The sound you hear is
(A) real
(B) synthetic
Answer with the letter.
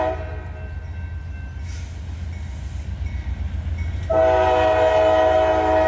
A